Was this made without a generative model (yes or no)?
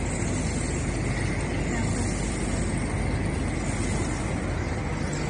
yes